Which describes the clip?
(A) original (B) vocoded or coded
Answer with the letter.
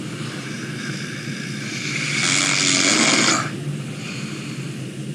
A